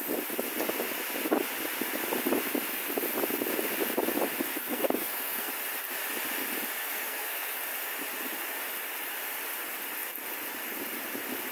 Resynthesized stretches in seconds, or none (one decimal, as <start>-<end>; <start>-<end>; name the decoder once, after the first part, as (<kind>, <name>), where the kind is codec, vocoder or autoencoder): 4.5-5.5 (codec, SNAC); 6.8-7.6